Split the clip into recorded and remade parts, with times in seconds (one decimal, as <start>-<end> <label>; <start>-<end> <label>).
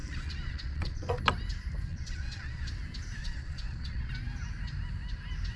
0.0-1.2 remade; 1.2-1.9 recorded; 1.9-2.7 remade; 2.7-3.2 recorded; 3.2-4.1 remade; 4.1-5.6 recorded